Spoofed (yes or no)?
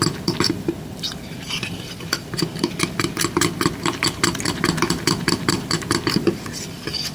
yes